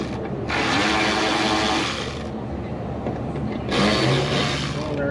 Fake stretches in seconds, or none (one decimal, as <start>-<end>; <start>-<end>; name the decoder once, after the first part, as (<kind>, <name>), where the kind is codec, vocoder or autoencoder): none